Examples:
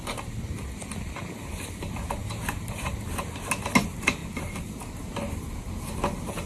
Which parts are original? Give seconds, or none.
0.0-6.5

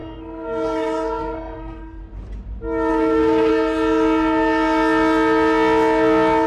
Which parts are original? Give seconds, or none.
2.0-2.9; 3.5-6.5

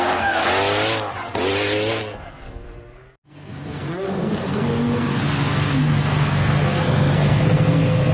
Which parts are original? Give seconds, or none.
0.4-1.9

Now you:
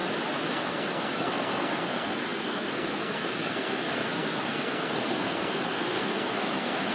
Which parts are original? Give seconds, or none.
0.0-0.5

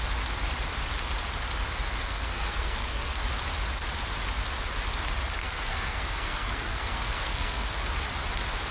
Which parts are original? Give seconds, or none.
0.0-2.0; 3.1-5.4; 7.7-8.7